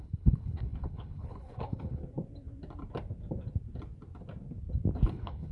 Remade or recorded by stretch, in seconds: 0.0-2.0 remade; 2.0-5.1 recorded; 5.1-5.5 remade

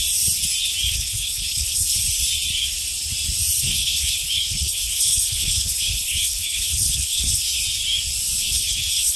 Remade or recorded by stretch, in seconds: 0.0-0.9 recorded; 0.9-2.0 remade; 2.0-3.6 recorded; 3.6-7.6 remade; 7.6-8.4 recorded; 8.4-9.2 remade